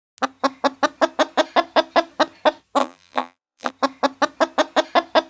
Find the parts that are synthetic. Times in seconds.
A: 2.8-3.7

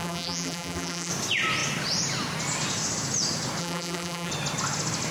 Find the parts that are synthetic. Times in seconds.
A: 0.0-1.1; 3.6-4.3

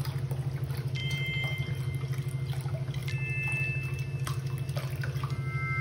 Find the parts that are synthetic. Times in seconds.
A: 1.0-1.7

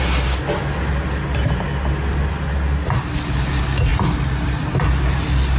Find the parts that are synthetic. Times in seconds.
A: 3.9-4.7